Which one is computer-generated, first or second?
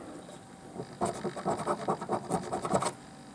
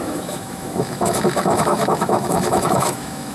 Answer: second